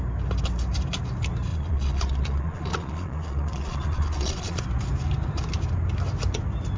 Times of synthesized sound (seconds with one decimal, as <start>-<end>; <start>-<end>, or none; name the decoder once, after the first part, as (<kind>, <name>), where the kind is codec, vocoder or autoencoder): 1.5-4.6 (vocoder, Vocos)